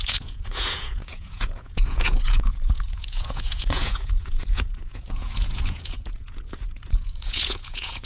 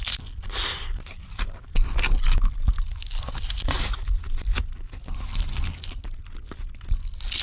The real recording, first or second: second